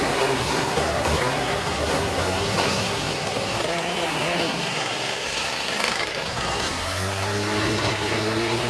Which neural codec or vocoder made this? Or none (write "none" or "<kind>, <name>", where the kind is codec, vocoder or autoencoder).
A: codec, SNAC